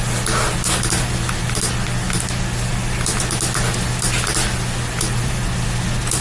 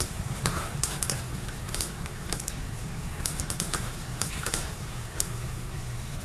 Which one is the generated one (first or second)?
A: second